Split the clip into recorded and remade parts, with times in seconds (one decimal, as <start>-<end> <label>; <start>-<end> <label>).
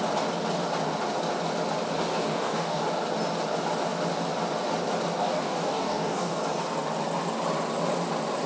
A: 0.0-2.1 recorded; 2.1-2.8 remade; 2.8-5.2 recorded; 5.2-6.4 remade; 6.4-8.5 recorded